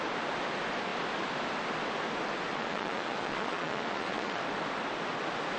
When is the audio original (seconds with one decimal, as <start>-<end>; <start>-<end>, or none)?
0.0-2.5; 4.4-5.6